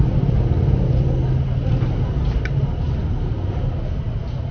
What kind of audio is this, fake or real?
real